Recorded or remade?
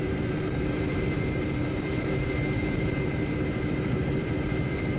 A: remade